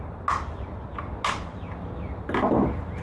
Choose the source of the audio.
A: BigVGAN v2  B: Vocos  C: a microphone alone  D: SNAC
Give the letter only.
C